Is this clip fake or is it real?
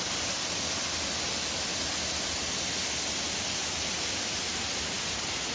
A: real